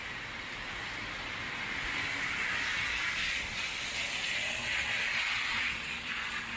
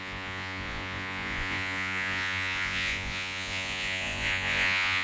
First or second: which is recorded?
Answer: first